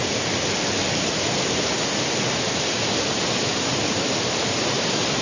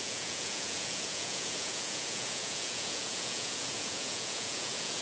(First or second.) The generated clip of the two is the second